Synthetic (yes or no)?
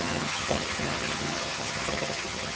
yes